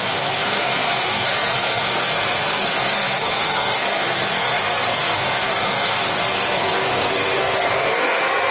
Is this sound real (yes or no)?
no